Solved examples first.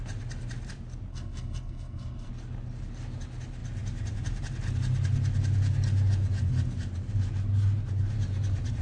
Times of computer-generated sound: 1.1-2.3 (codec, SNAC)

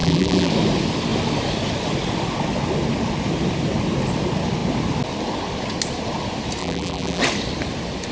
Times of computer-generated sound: 0.0-0.5 (vocoder, BigVGAN v2); 6.6-7.2

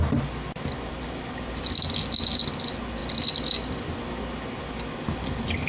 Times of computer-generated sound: none

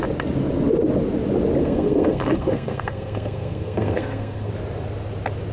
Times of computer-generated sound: 1.6-4.5 (codec, SNAC)

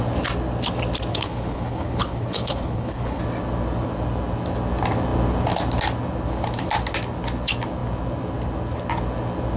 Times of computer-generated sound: 1.1-3.2 (codec, HILCodec)

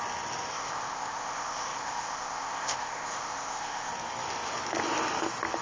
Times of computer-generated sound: 0.5-3.9 (codec, ZipCodec)

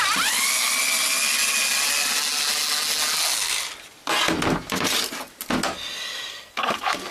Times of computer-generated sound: 6.3-7.1 (codec, SNAC)